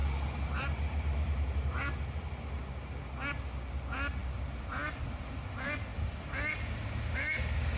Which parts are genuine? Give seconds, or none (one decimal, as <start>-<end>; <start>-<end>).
0.0-7.8